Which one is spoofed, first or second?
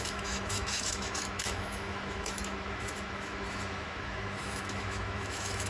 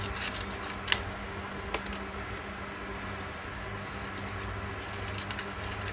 first